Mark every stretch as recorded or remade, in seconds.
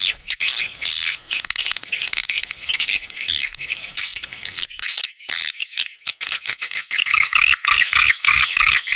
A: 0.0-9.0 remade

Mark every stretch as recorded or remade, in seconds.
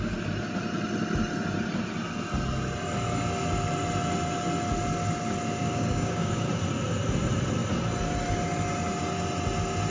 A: 0.0-5.6 recorded; 5.6-6.5 remade; 6.5-9.9 recorded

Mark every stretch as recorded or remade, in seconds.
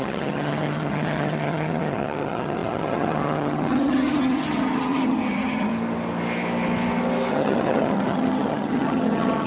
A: 0.0-5.7 remade; 5.7-7.3 recorded; 7.3-9.5 remade